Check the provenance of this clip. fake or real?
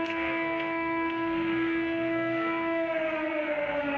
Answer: fake